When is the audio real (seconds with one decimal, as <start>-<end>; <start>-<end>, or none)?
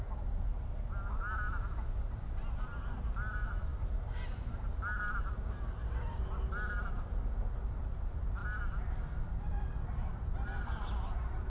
0.0-11.5